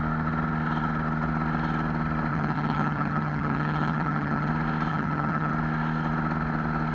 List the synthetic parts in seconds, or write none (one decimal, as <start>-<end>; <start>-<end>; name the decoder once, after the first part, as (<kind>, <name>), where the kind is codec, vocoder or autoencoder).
2.3-4.5 (vocoder, HiFi-GAN); 4.9-5.5